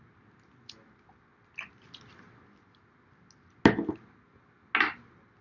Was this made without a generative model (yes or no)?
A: yes